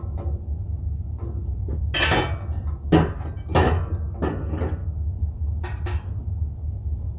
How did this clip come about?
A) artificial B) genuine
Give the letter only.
B